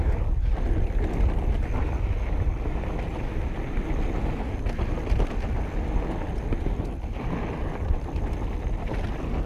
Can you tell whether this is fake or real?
real